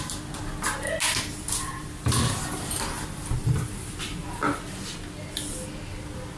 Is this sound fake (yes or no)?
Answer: no